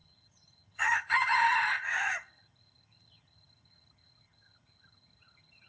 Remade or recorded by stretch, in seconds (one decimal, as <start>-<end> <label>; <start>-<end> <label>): 0.0-5.7 remade